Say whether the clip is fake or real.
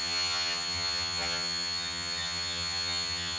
fake